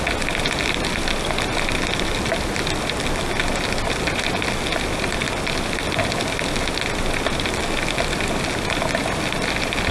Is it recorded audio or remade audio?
recorded